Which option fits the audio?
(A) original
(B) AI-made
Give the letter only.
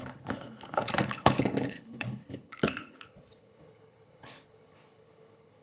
B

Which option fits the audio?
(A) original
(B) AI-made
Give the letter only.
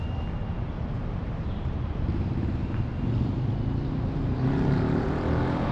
A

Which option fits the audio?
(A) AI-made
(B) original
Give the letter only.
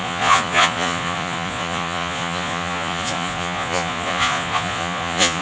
A